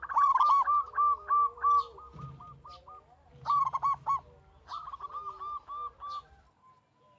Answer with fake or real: real